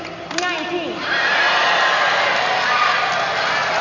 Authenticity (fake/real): real